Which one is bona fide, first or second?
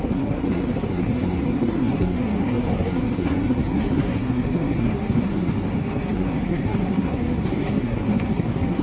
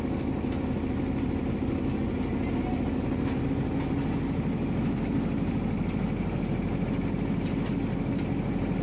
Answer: second